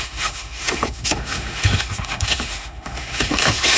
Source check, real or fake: fake